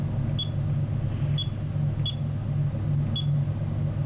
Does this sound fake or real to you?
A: real